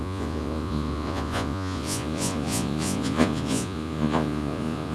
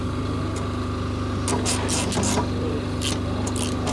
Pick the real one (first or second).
second